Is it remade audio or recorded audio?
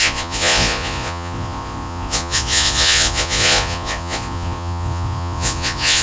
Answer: remade